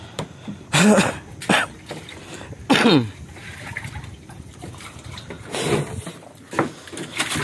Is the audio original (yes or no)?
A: yes